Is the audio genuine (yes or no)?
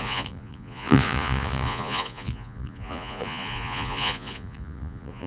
no